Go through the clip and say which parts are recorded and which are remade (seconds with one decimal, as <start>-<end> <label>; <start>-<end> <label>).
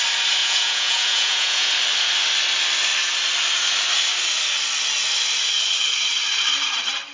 0.0-0.4 recorded; 0.4-1.7 remade; 1.7-7.1 recorded